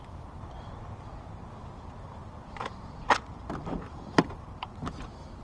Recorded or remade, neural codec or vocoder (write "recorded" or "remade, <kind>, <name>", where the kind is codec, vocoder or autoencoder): remade, vocoder, BigVGAN v2